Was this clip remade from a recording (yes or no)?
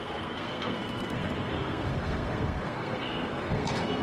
yes